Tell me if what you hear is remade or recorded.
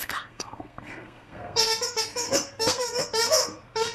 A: remade